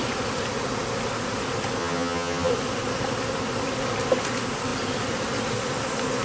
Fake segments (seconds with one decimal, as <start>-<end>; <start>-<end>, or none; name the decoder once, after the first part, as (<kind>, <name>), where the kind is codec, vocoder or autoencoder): 1.8-2.5 (vocoder, HiFi-GAN)